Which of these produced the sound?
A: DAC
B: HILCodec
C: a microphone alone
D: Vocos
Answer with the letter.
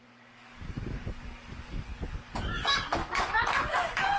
A